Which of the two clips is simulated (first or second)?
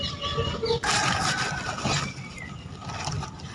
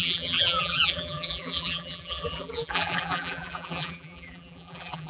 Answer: second